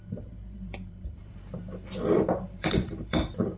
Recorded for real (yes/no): no